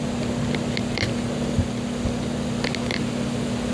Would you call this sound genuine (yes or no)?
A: yes